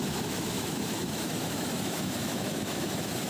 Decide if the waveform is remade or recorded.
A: remade